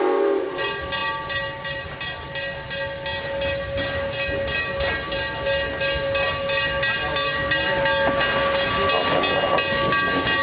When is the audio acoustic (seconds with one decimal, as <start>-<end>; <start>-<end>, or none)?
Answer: 0.0-10.4